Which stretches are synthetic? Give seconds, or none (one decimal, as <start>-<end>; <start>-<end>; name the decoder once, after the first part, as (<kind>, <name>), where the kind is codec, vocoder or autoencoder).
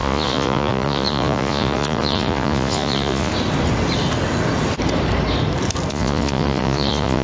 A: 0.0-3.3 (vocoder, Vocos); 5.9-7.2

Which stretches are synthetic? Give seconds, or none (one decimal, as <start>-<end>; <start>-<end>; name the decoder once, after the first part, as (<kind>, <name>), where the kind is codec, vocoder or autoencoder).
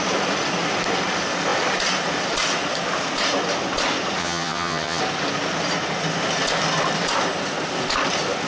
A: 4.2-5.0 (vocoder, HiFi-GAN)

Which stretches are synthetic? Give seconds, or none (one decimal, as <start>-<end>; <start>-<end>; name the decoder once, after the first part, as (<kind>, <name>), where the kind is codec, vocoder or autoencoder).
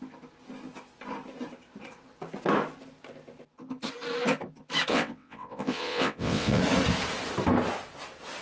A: 4.9-6.6 (vocoder, WaveNeXt)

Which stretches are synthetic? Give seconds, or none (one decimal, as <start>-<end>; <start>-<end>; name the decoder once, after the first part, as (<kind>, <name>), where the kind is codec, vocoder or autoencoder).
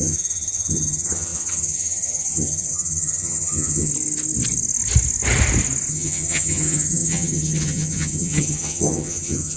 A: 0.0-3.9 (vocoder, HiFi-GAN); 5.9-9.6